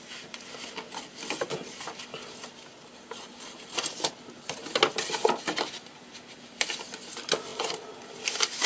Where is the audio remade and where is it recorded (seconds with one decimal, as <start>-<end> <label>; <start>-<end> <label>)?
0.0-8.7 recorded